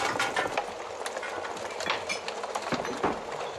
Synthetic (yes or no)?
no